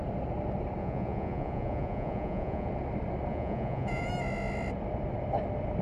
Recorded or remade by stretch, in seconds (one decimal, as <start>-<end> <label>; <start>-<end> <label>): 0.0-0.8 recorded; 0.8-2.7 remade; 2.7-3.3 recorded; 3.3-4.1 remade; 4.1-5.8 recorded